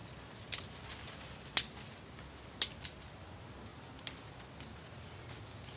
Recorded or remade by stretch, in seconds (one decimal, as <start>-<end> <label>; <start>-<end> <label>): 0.0-5.8 recorded